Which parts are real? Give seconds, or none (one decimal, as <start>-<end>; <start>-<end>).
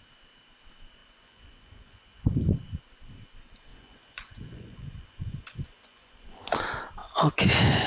0.0-1.0; 2.6-3.7; 6.6-7.0